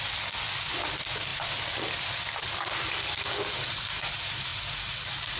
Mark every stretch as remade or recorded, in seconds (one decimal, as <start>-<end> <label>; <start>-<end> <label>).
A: 0.0-5.4 recorded